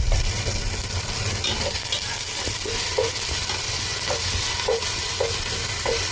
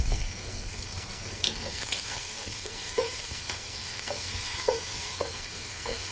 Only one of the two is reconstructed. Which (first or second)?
second